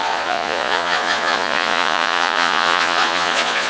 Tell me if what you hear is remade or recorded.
remade